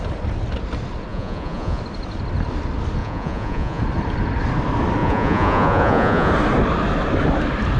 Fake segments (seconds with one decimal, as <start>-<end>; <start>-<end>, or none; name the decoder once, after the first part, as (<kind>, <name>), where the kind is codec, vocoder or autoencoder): 1.1-1.8 (vocoder, Vocos); 3.0-3.8; 5.0-6.3